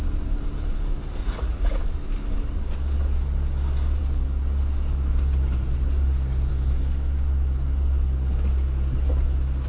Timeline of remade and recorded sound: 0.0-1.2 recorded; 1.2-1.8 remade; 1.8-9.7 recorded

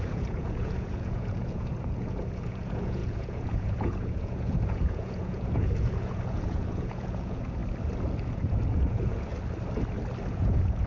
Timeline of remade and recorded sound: 0.0-7.6 remade; 7.6-8.2 recorded; 8.2-9.3 remade; 9.3-10.3 recorded; 10.3-10.9 remade

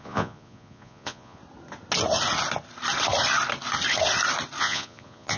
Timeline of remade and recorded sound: 0.0-1.4 remade; 1.4-4.6 recorded; 4.6-5.4 remade

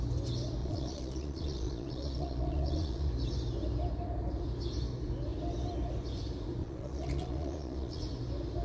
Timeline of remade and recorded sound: 0.0-0.6 recorded; 0.6-3.1 remade; 3.1-6.6 recorded; 6.6-8.0 remade; 8.0-8.6 recorded

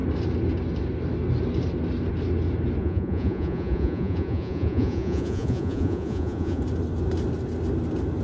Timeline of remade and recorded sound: 0.0-2.8 recorded; 2.8-6.6 remade; 6.6-8.2 recorded

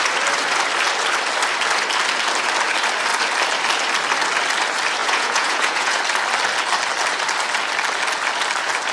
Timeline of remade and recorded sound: 0.0-5.0 recorded; 5.0-6.0 remade; 6.0-8.9 recorded

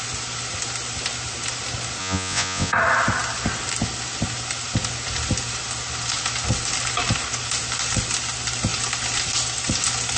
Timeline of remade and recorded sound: 0.0-2.0 recorded; 2.0-2.7 remade; 2.7-10.2 recorded